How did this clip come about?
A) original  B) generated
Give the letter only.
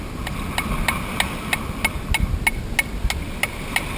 A